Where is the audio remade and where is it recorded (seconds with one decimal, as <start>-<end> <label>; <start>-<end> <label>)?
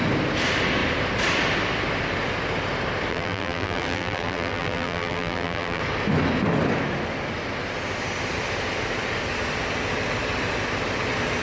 0.0-3.1 recorded; 3.1-5.8 remade; 5.8-11.4 recorded